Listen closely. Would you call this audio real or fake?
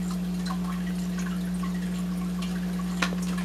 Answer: real